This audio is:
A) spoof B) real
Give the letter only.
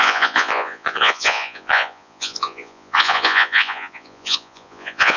A